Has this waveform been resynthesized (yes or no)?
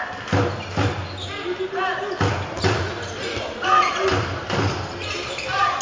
no